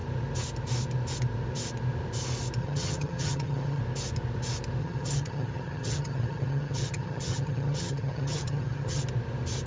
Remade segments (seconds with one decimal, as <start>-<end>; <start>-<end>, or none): 2.6-3.8; 4.8-9.0